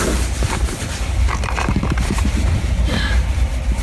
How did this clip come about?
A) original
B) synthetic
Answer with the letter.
B